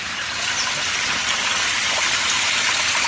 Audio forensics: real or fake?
real